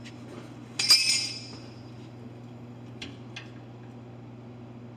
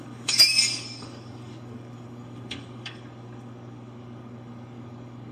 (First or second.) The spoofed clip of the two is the second